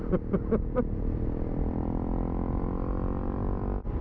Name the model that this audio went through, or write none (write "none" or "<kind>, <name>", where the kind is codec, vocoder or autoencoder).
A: none